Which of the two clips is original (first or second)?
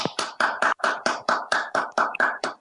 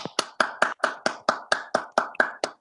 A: second